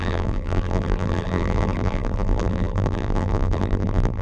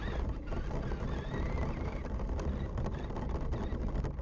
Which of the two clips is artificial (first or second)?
first